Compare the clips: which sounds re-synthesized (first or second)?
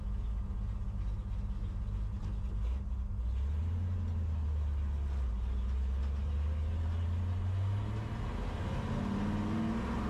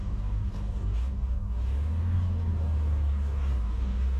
second